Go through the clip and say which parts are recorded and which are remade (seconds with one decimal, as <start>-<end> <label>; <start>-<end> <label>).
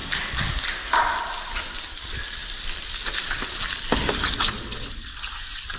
0.0-5.8 recorded